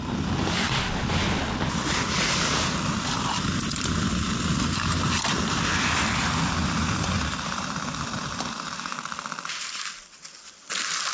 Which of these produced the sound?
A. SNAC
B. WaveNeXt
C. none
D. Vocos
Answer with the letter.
C